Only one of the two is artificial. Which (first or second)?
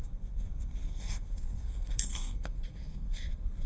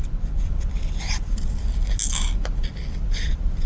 first